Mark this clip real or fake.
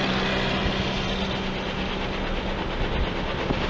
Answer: real